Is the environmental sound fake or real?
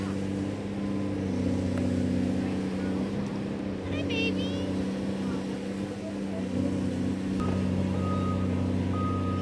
real